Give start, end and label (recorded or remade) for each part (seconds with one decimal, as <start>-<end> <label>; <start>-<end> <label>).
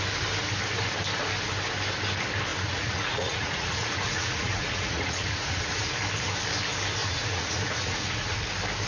0.0-2.5 recorded; 2.5-6.0 remade; 6.0-7.0 recorded; 7.0-8.4 remade; 8.4-8.9 recorded